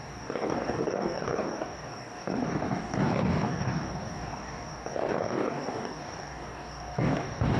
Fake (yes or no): yes